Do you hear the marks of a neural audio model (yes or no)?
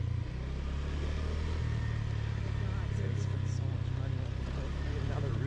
no